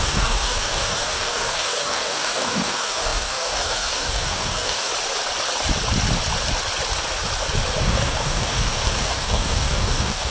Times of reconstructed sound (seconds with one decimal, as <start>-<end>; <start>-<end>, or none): 0.0-4.9; 7.8-10.3